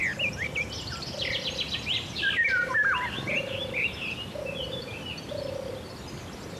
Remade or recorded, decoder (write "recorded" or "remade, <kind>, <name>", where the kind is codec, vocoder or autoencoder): remade, vocoder, BigVGAN v2